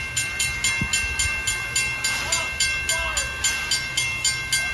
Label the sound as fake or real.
real